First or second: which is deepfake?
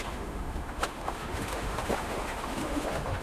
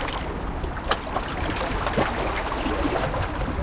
first